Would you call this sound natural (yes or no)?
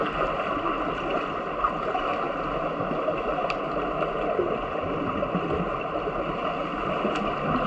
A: yes